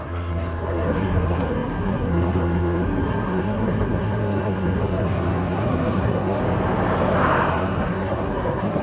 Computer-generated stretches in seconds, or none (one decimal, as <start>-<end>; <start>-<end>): 0.0-6.4; 7.5-8.8